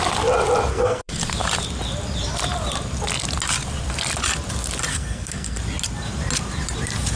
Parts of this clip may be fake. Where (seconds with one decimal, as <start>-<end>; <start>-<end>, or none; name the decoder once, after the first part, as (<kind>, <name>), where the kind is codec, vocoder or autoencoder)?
0.7-1.2 (codec, SNAC); 4.9-5.6